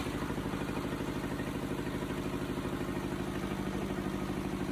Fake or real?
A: real